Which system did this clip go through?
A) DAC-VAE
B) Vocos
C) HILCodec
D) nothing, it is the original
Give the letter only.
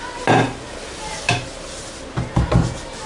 D